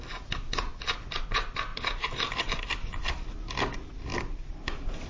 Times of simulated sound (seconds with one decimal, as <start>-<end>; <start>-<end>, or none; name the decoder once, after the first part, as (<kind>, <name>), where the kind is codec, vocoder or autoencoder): 1.7-3.1 (vocoder, BigVGAN v2); 4.1-5.1